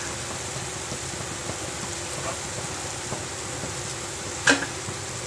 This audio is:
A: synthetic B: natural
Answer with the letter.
B